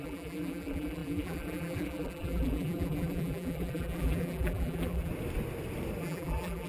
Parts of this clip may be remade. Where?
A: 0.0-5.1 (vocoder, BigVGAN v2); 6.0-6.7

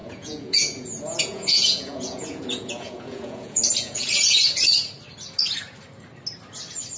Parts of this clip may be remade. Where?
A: 0.0-4.1 (vocoder, Vocos)

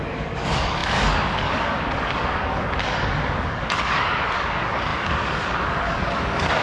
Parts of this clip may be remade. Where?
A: 0.0-6.6 (codec, DAC)

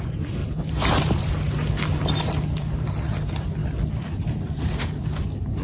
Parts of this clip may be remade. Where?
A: 0.4-1.3 (vocoder, BigVGAN v2)

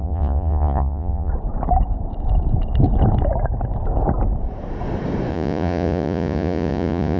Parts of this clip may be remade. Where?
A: 0.0-1.3 (vocoder, Vocos); 5.3-7.2